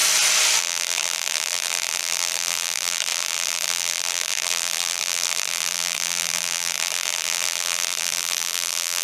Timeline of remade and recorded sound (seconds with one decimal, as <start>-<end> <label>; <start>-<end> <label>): 0.0-0.6 recorded; 0.6-9.0 remade